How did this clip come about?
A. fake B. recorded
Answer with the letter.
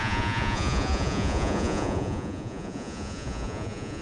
A